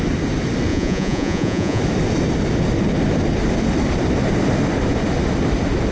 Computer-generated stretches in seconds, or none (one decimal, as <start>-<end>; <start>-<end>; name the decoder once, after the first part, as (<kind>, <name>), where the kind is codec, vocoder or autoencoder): 0.7-1.8 (vocoder, Vocos)